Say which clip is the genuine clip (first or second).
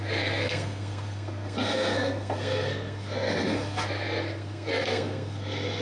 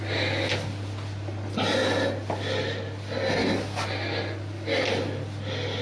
second